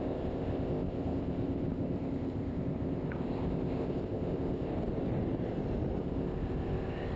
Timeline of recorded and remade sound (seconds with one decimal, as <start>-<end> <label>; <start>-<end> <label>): 0.0-4.7 remade; 4.7-6.0 recorded; 6.0-7.2 remade

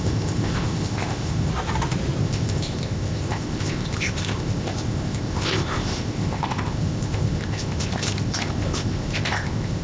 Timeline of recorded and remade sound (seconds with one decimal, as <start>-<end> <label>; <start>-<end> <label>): 0.0-1.5 remade; 1.5-2.2 recorded; 2.2-9.8 remade